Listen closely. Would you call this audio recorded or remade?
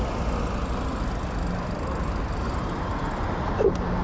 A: recorded